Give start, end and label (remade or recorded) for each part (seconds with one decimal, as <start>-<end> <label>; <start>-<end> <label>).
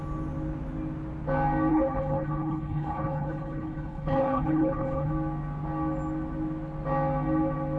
0.0-1.7 recorded; 1.7-5.1 remade; 5.1-7.8 recorded